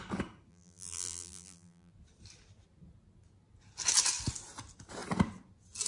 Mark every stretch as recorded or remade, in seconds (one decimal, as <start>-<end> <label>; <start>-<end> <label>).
0.0-0.5 recorded; 0.5-1.9 remade; 1.9-5.9 recorded

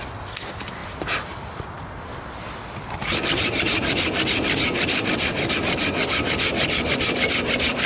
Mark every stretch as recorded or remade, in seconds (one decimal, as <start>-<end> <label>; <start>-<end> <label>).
0.0-0.8 remade; 0.8-5.5 recorded; 5.5-7.9 remade

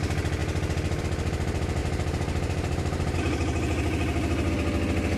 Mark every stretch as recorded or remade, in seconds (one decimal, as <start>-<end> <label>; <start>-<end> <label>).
0.0-1.8 recorded; 1.8-4.5 remade; 4.5-5.2 recorded

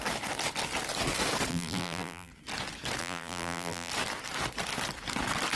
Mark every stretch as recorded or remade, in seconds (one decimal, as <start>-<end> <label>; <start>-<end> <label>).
0.0-1.5 recorded; 1.5-2.3 remade; 2.3-3.0 recorded; 3.0-3.9 remade; 3.9-5.6 recorded

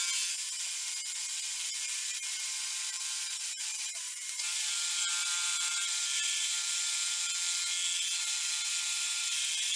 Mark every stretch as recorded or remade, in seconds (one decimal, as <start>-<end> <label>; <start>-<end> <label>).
0.0-1.7 recorded; 1.7-7.2 remade; 7.2-8.2 recorded; 8.2-9.8 remade

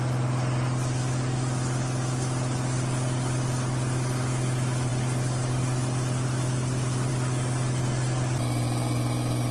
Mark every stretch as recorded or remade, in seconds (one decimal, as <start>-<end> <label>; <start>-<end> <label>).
0.0-9.5 recorded